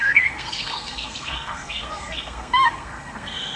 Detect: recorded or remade remade